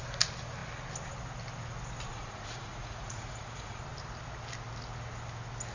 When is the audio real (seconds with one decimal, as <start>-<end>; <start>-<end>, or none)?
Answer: 0.0-2.1; 3.8-5.7